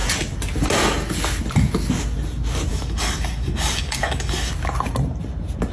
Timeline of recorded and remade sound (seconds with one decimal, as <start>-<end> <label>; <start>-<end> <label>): 0.0-2.7 recorded; 2.7-4.5 remade; 4.5-5.7 recorded